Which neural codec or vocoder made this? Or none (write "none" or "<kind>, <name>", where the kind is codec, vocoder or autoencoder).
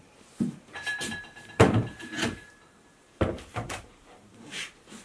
vocoder, BigVGAN v2